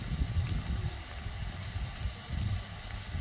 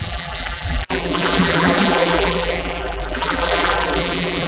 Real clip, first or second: first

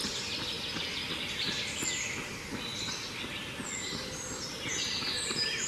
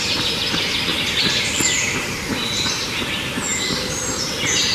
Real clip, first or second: first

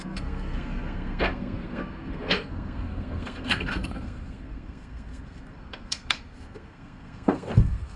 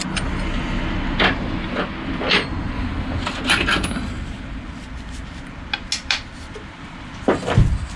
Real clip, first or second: second